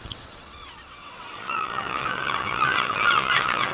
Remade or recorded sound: remade